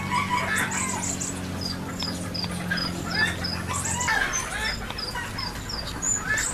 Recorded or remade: recorded